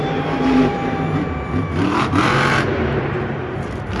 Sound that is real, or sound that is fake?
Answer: fake